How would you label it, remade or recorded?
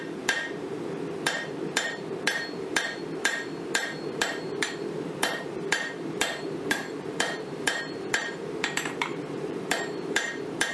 remade